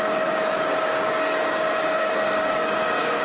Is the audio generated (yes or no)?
yes